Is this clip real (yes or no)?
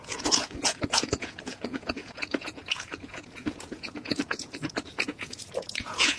no